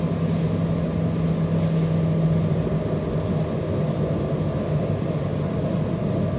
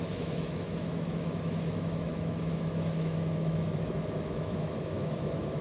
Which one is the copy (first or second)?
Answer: second